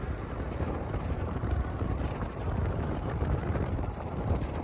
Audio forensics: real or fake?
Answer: fake